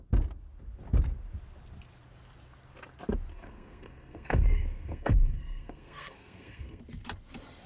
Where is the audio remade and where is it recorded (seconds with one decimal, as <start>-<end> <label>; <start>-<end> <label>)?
0.0-3.3 recorded; 3.3-6.8 remade; 6.8-7.7 recorded